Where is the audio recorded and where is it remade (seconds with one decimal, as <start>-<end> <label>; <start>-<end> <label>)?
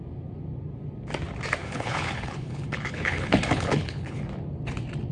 0.0-1.6 recorded; 1.6-4.2 remade; 4.2-5.1 recorded